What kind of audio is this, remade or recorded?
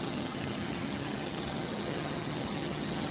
remade